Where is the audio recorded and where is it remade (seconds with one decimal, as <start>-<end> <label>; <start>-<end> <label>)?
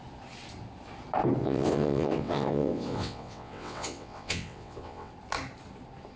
0.0-1.4 recorded; 1.4-5.1 remade; 5.1-6.2 recorded